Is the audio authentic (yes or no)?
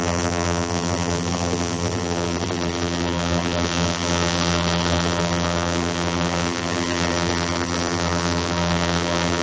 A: no